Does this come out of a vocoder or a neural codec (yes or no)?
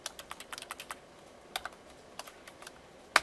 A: no